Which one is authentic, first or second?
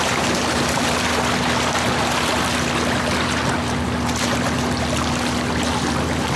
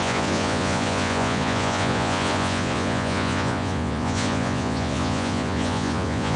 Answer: first